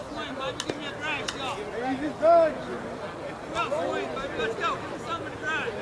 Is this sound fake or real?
real